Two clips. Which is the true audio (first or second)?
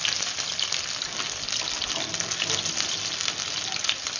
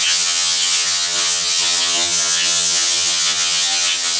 first